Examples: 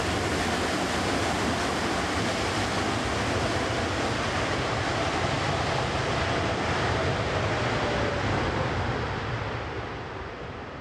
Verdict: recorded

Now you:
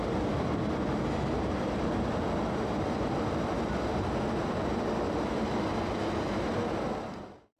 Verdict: recorded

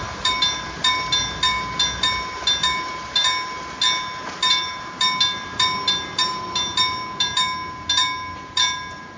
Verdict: recorded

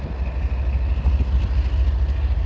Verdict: recorded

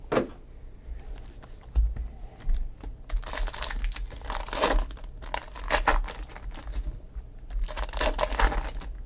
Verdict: recorded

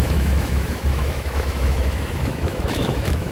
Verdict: remade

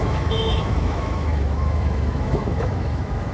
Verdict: remade